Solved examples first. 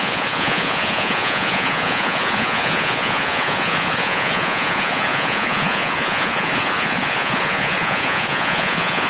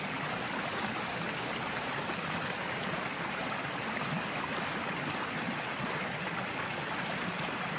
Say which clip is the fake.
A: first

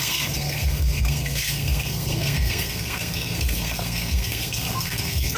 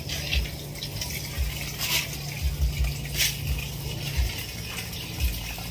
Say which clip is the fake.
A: first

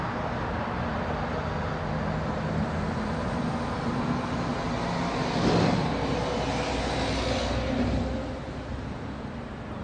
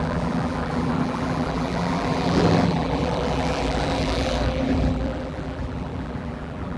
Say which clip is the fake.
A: second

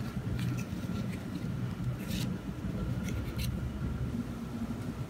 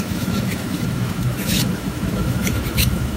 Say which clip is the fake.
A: second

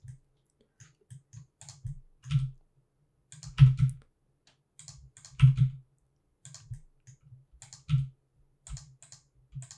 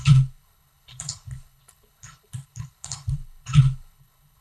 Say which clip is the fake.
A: second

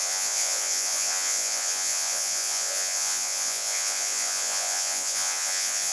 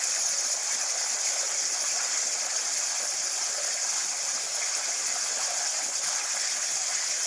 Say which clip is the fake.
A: first